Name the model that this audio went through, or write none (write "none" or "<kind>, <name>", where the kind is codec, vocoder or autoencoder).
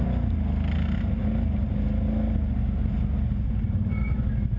none